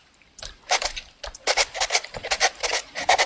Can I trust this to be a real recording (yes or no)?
yes